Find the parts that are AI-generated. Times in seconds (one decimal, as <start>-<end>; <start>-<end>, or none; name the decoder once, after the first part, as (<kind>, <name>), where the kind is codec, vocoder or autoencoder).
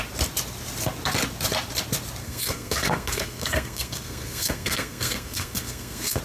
2.2-6.2 (codec, SNAC)